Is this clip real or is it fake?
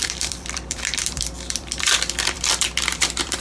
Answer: fake